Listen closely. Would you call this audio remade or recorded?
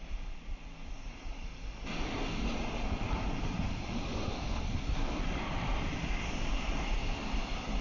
recorded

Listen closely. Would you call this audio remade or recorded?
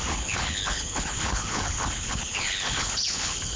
remade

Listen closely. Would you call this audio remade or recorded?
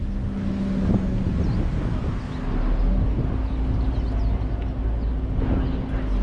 recorded